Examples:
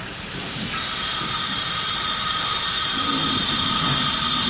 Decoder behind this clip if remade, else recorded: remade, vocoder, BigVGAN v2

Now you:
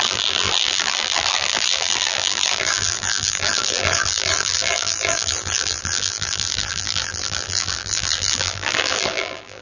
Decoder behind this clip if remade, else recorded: remade, vocoder, BigVGAN v2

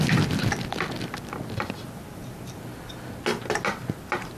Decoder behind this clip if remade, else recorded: recorded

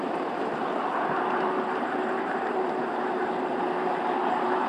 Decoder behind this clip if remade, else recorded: remade, vocoder, BigVGAN v2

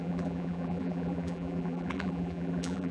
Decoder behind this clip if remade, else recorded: remade, vocoder, BigVGAN v2